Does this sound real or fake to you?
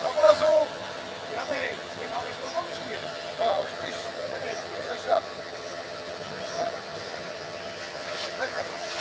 fake